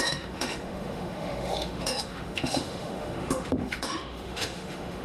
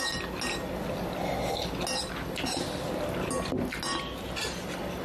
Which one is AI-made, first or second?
first